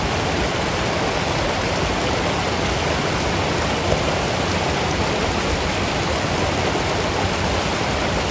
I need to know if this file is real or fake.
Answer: real